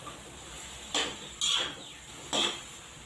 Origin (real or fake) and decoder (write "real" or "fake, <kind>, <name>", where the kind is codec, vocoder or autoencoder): real